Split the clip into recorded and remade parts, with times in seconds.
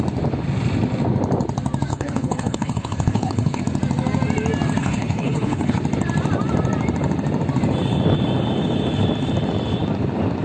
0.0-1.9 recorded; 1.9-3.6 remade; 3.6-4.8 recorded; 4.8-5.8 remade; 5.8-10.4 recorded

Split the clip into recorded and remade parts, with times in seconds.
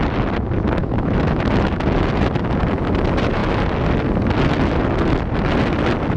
0.0-0.8 recorded; 0.8-1.4 remade; 1.4-6.2 recorded